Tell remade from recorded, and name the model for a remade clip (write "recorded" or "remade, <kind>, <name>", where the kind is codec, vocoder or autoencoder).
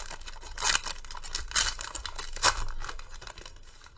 recorded